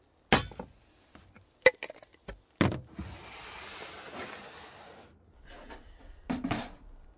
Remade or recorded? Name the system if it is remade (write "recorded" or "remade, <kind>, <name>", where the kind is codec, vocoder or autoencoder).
recorded